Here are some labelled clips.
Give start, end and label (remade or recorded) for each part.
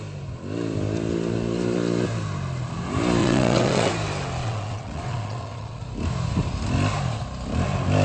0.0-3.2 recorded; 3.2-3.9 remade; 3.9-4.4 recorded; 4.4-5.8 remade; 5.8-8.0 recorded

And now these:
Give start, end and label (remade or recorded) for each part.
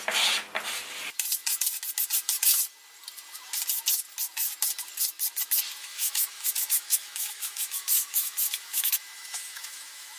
0.0-5.8 recorded; 5.8-10.2 remade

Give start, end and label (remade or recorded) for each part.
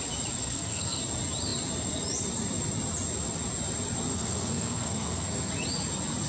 0.0-0.4 recorded; 0.4-1.0 remade; 1.0-4.1 recorded; 4.1-5.5 remade; 5.5-6.3 recorded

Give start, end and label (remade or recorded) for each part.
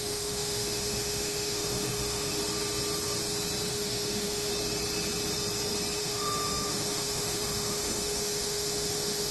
0.0-2.4 remade; 2.4-3.7 recorded; 3.7-4.5 remade; 4.5-6.0 recorded; 6.0-9.3 remade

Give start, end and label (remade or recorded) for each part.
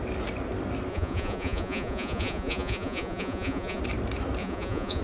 0.0-0.9 recorded; 0.9-3.8 remade; 3.8-4.4 recorded; 4.4-5.0 remade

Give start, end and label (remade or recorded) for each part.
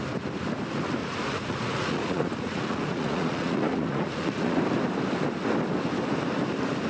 0.0-1.0 recorded; 1.0-4.6 remade; 4.6-6.9 recorded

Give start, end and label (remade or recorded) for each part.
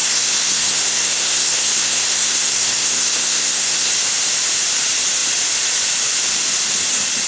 0.0-3.9 remade; 3.9-7.3 recorded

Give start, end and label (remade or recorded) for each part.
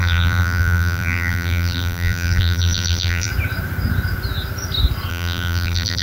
0.0-3.3 remade; 3.3-5.1 recorded; 5.1-6.0 remade